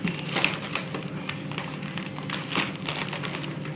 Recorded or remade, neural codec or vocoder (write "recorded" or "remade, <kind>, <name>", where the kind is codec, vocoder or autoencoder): recorded